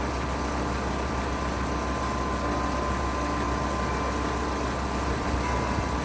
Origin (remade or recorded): recorded